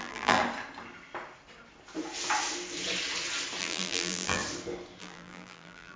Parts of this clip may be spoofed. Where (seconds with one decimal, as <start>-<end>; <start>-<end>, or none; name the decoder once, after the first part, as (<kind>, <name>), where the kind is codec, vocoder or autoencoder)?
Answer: 0.0-0.4 (vocoder, BigVGAN v2); 3.6-4.4; 5.0-6.0